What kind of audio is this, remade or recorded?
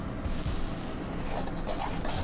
recorded